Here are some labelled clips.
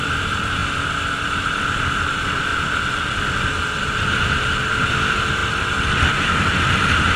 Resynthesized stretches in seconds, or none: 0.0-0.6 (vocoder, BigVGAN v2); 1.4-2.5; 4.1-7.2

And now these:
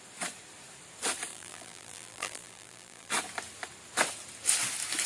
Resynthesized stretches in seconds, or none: 1.3-3.1 (vocoder, BigVGAN v2)

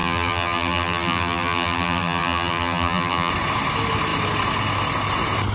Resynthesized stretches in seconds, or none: 0.0-3.3 (vocoder, BigVGAN v2)

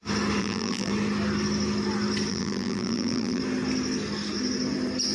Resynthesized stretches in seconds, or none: 0.4-0.9 (vocoder, BigVGAN v2); 2.3-3.4

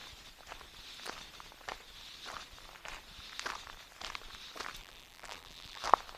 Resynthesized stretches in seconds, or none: 4.8-5.8 (vocoder, BigVGAN v2)

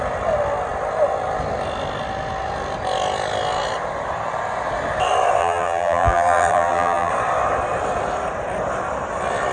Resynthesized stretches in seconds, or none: 5.4-7.1 (vocoder, BigVGAN v2)

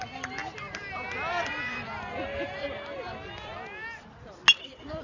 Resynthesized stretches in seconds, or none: 0.0-0.4 (vocoder, BigVGAN v2); 1.3-3.5; 4.6-5.0